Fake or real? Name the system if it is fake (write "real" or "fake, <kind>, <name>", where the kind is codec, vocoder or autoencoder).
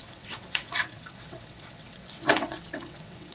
fake, vocoder, WaveNeXt